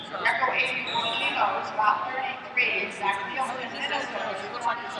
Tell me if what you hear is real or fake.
real